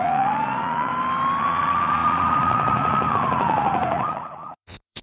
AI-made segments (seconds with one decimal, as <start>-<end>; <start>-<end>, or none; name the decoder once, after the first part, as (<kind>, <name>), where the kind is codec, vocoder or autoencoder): 0.0-0.9 (vocoder, Vocos); 1.4-5.0